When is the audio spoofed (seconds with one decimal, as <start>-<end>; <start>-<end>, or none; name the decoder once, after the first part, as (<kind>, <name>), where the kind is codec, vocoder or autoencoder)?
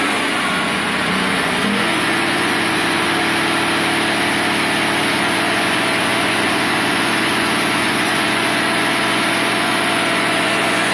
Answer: 0.0-3.1 (vocoder, Vocos); 5.1-10.9